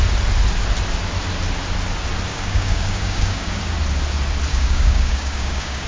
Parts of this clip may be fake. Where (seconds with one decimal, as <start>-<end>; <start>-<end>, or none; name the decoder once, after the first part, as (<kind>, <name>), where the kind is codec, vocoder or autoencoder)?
2.3-3.6 (codec, DAC); 4.5-5.9